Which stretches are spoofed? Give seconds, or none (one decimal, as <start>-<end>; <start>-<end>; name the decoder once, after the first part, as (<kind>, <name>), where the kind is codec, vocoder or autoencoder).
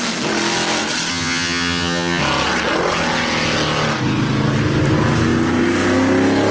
1.1-2.2 (vocoder, HiFi-GAN)